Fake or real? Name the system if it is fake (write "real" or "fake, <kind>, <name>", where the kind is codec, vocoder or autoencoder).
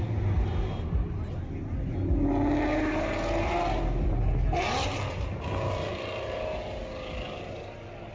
real